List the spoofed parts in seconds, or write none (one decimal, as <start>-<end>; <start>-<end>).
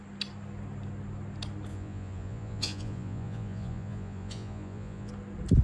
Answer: 1.7-5.1